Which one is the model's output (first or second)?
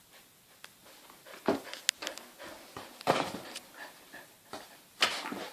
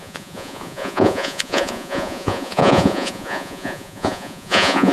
second